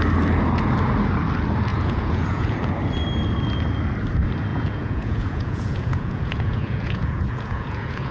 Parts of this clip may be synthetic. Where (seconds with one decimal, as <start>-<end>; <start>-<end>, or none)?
1.7-2.7; 4.5-8.1